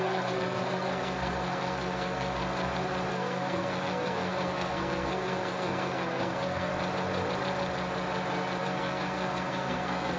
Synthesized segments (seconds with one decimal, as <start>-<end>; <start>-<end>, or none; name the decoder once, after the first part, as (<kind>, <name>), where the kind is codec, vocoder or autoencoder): 0.0-2.4 (codec, SNAC); 3.1-6.7; 8.6-10.2